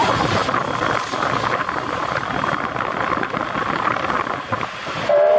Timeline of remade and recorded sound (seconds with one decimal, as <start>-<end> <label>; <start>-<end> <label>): 0.0-5.4 recorded